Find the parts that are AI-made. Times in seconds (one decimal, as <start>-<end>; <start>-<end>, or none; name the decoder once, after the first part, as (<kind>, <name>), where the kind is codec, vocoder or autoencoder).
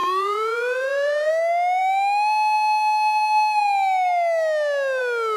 0.0-1.3 (vocoder, Vocos)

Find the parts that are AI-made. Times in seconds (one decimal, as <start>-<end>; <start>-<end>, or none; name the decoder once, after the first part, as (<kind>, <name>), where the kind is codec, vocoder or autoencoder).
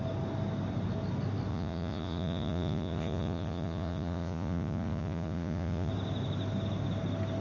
1.5-5.9 (vocoder, Vocos)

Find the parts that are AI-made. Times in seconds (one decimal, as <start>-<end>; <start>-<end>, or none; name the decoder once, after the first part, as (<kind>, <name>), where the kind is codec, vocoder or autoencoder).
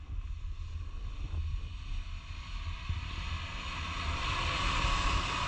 none